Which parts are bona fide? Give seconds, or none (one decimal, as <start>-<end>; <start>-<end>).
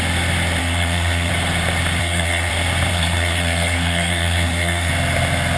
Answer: 0.0-0.6; 1.3-2.0; 2.5-2.9; 4.9-5.6